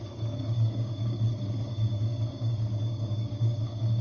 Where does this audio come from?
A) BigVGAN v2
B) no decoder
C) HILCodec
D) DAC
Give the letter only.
D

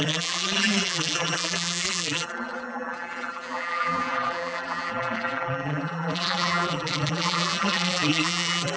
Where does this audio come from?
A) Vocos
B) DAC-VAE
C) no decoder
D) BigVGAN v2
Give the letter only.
D